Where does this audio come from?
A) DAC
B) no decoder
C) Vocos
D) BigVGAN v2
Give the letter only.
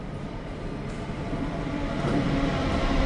D